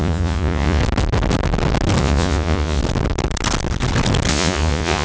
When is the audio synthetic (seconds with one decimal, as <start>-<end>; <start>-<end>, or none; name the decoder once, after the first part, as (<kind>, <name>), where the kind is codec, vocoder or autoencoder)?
0.0-0.8 (vocoder, Vocos); 2.0-2.8; 4.3-5.0